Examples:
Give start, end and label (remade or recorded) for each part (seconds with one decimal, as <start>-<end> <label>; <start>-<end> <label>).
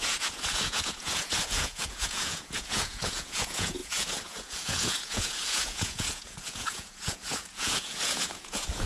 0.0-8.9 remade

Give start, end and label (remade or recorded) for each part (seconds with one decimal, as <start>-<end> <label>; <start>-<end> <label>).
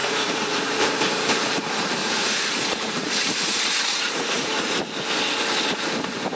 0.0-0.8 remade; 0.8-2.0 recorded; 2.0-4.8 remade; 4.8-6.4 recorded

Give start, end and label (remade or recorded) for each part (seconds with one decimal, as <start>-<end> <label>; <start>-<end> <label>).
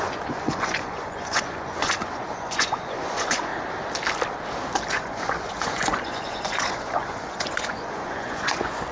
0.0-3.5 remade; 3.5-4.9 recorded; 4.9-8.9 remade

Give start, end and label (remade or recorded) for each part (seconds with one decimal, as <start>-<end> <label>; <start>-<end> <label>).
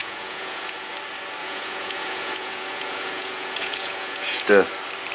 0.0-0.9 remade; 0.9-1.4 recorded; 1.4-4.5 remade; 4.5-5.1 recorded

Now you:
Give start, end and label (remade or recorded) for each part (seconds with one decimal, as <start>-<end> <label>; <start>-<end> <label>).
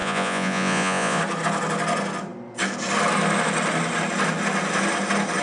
0.0-1.2 remade; 1.2-5.4 recorded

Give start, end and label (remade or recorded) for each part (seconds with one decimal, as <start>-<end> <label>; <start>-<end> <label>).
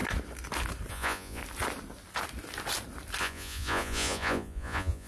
0.0-0.9 recorded; 0.9-1.4 remade; 1.4-3.2 recorded; 3.2-5.1 remade